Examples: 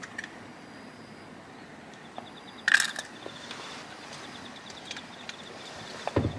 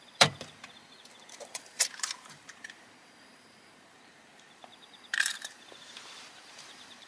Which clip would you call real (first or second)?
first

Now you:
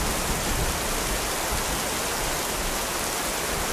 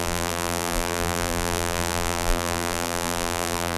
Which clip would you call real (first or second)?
first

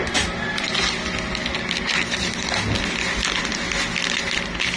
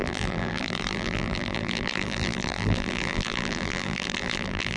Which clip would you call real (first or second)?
first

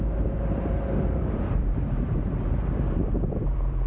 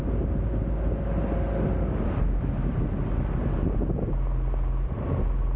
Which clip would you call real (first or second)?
second